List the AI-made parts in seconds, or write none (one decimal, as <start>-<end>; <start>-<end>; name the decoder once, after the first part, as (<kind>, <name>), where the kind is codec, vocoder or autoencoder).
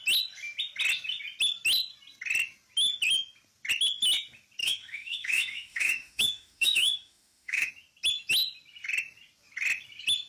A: 4.6-7.7 (autoencoder, DAC-VAE)